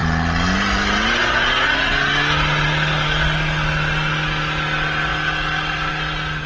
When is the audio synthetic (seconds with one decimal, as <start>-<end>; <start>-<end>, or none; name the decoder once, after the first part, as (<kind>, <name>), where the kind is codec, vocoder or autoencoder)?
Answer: none